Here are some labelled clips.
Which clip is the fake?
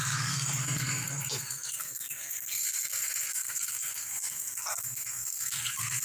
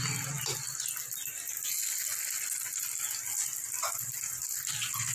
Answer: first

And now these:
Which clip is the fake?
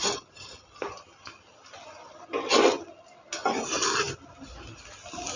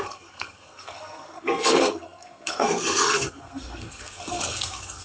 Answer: second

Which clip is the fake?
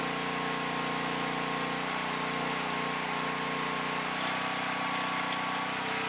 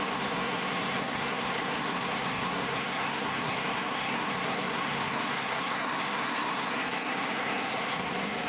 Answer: second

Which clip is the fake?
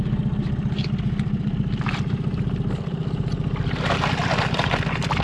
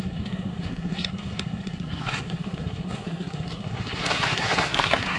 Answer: second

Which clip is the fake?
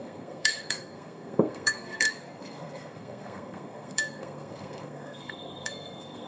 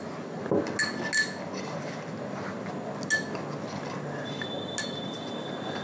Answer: first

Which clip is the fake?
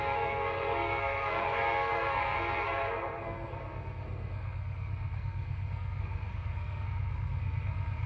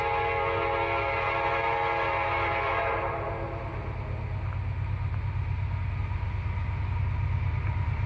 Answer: first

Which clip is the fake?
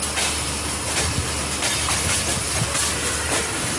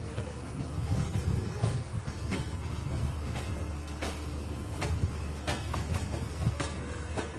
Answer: second